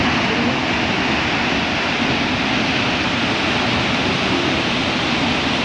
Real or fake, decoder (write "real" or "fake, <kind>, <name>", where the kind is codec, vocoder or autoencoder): real